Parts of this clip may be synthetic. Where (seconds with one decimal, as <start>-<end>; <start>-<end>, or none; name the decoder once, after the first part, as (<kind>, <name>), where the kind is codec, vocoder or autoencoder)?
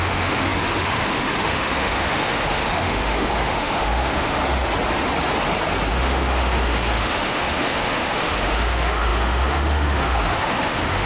0.0-4.4 (autoencoder, DAC-VAE); 5.9-11.1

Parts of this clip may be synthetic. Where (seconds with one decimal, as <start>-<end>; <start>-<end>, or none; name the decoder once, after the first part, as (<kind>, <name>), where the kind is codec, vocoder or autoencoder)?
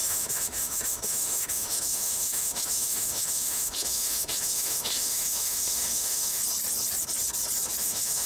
0.0-6.4 (autoencoder, DAC-VAE); 7.8-8.3